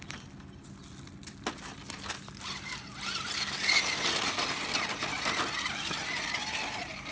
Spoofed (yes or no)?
no